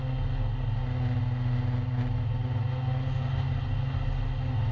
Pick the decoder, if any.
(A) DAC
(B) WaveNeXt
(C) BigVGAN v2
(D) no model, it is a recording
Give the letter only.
D